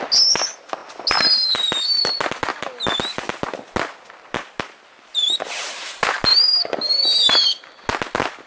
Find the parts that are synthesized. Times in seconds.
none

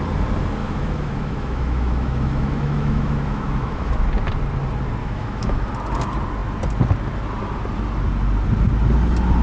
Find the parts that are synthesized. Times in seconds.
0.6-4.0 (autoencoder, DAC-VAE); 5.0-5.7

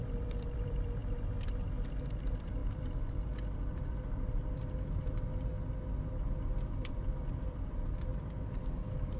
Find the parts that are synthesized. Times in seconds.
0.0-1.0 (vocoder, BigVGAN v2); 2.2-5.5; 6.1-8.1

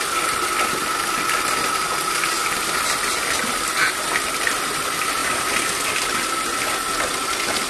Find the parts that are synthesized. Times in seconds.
5.2-5.9 (vocoder, BigVGAN v2)

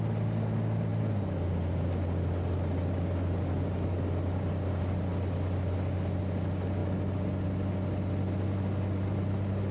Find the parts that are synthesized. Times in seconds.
none